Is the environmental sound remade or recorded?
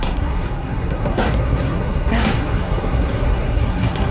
remade